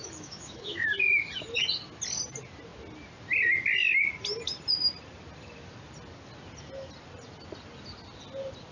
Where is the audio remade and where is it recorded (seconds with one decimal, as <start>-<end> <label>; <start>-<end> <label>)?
0.0-0.9 remade; 0.9-8.7 recorded